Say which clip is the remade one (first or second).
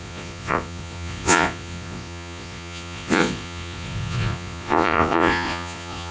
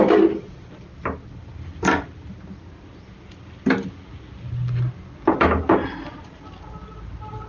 first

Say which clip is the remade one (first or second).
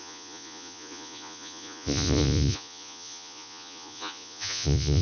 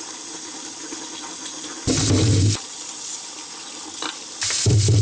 first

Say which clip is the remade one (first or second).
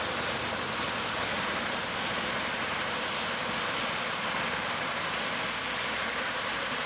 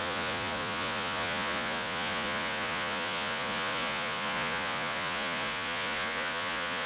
second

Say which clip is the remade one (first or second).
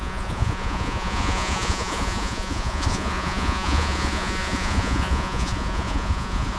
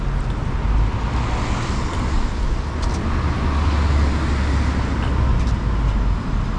first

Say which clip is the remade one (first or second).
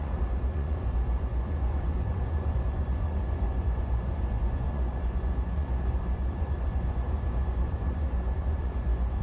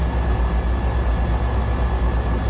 first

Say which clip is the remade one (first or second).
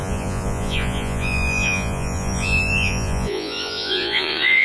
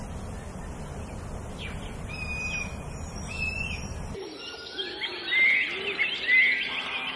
first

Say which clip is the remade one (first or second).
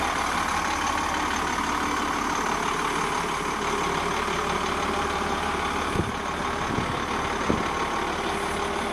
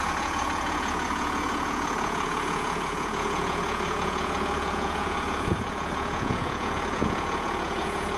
second